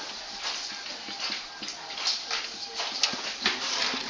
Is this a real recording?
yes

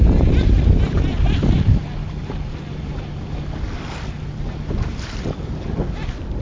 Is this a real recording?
yes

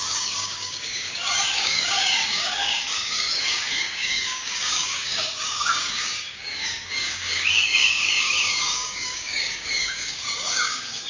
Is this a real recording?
no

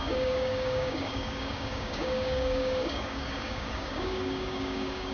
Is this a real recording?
no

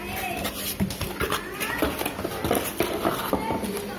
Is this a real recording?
yes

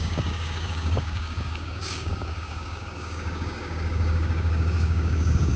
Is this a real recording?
no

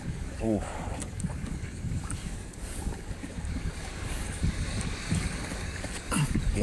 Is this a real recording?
no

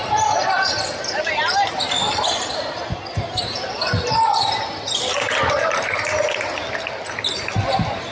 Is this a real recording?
yes